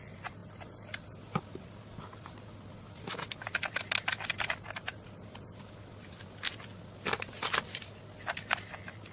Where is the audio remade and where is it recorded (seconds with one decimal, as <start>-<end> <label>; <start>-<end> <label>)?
0.0-9.1 recorded